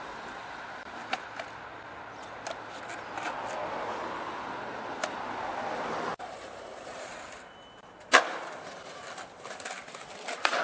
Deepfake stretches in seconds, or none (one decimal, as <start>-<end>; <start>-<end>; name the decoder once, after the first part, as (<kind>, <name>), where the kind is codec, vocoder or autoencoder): 6.1-7.1 (vocoder, BigVGAN v2)